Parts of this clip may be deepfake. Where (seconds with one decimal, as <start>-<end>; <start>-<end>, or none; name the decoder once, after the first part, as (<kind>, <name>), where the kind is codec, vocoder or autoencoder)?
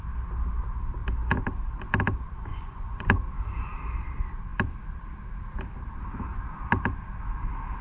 2.5-3.2 (vocoder, Vocos)